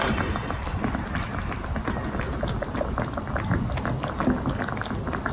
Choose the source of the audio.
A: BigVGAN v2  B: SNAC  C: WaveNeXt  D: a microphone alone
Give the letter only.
D